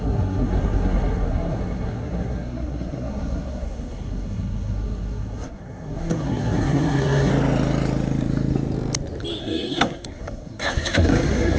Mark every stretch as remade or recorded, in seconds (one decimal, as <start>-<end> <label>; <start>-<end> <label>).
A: 0.0-7.3 remade; 7.3-9.4 recorded; 9.4-11.6 remade

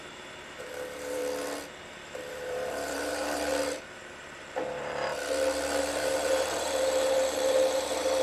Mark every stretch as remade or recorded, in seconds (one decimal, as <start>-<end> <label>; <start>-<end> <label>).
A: 0.0-1.2 remade; 1.2-2.3 recorded; 2.3-3.5 remade; 3.5-4.4 recorded; 4.4-5.1 remade; 5.1-5.8 recorded; 5.8-8.2 remade

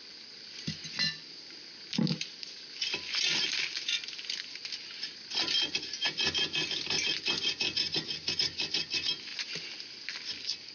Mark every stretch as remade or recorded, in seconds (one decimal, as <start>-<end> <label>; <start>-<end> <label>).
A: 0.0-10.7 recorded

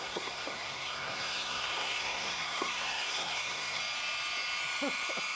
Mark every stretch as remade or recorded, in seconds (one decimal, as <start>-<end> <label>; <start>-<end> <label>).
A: 0.0-3.8 remade; 3.8-5.4 recorded

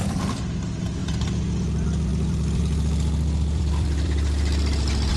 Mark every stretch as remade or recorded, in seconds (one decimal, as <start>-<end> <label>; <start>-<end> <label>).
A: 0.0-5.2 recorded

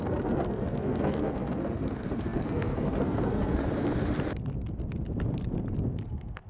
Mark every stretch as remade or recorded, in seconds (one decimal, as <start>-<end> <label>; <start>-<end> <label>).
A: 0.0-3.6 remade; 3.6-6.1 recorded; 6.1-6.5 remade

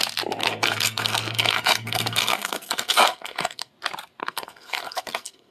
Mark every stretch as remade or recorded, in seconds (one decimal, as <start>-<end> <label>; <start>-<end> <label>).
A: 0.0-0.4 recorded; 0.4-3.7 remade; 3.7-4.2 recorded; 4.2-5.5 remade

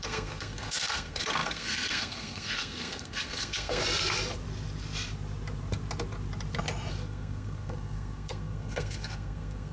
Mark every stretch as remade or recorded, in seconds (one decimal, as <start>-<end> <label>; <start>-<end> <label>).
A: 0.0-3.8 remade; 3.8-6.9 recorded; 6.9-9.7 remade